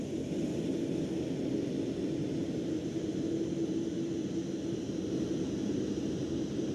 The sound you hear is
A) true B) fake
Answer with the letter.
A